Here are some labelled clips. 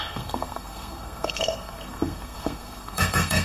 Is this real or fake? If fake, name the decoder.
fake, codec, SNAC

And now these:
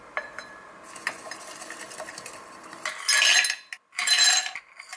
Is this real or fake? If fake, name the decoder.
real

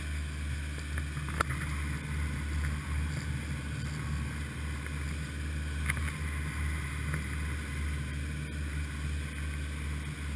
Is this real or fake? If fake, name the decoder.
real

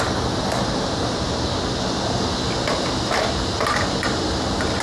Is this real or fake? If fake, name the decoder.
real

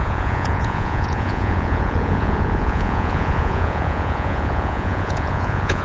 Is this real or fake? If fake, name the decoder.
fake, vocoder, Vocos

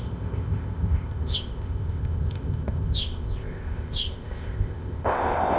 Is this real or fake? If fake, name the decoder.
fake, codec, ZipCodec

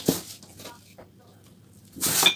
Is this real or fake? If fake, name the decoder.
real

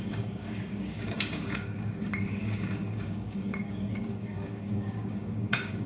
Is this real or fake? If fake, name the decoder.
fake, codec, DAC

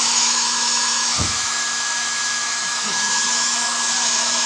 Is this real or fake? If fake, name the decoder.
fake, autoencoder, DAC-VAE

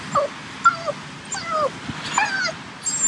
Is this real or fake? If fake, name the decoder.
real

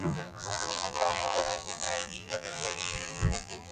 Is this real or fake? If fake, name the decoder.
fake, vocoder, BigVGAN v2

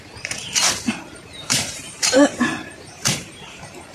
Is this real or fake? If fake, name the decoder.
fake, vocoder, BigVGAN v2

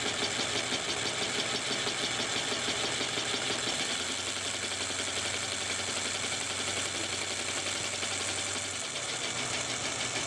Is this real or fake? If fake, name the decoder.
real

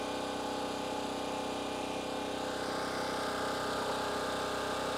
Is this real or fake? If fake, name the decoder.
real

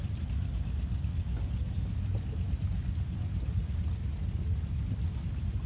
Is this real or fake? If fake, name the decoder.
real